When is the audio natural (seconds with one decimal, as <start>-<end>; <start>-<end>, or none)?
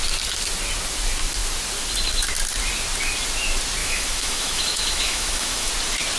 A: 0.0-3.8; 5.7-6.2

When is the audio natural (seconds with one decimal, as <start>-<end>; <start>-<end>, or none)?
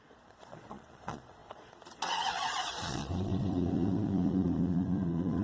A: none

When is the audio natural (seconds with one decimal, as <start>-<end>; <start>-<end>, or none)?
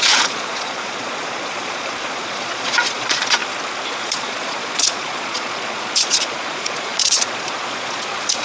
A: 3.4-3.9